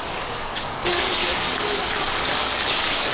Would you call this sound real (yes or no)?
no